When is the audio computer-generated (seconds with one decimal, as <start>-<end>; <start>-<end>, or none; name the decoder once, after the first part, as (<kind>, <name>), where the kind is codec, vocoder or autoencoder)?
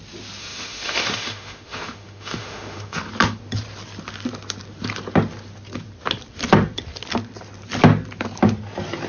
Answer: 0.4-3.0 (autoencoder, DAC-VAE)